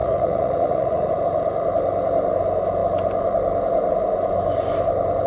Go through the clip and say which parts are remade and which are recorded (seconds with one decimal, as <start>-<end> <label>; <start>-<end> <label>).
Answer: 0.0-1.1 remade; 1.1-5.3 recorded